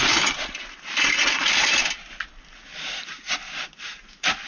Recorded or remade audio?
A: recorded